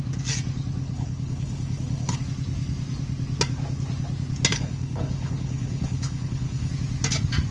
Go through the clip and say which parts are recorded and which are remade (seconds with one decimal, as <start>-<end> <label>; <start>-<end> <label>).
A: 0.0-0.8 recorded; 0.8-2.2 remade; 2.2-4.5 recorded; 4.5-6.7 remade; 6.7-7.5 recorded